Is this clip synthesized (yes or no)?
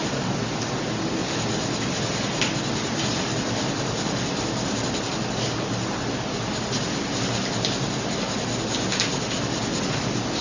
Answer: no